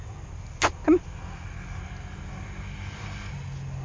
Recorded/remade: recorded